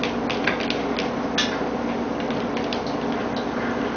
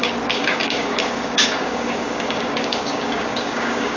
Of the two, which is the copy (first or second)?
second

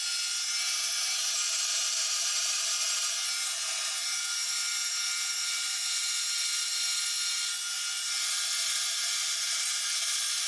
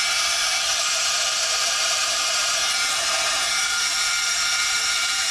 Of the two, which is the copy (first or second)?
second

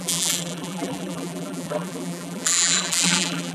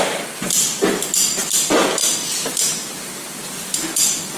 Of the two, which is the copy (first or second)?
first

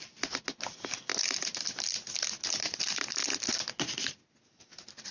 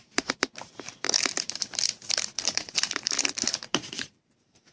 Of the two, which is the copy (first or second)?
second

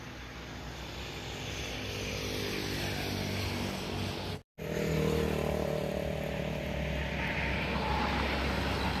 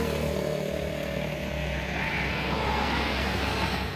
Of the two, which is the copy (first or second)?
second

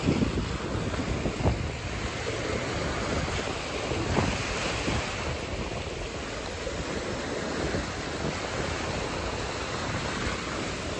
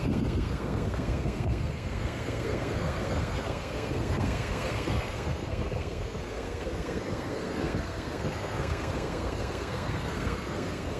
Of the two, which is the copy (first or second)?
second